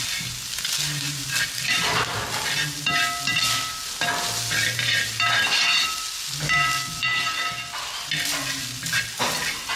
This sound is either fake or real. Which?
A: real